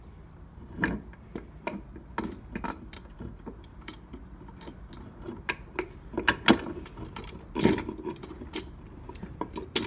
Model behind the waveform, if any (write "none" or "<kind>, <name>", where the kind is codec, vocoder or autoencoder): none